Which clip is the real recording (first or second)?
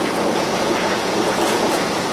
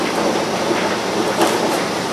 second